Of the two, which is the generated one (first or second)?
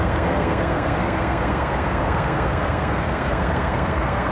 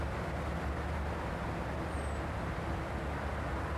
first